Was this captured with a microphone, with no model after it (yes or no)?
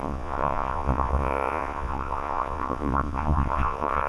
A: no